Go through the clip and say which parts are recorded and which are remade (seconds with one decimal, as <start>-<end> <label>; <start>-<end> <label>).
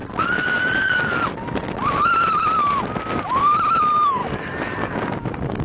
0.0-5.6 recorded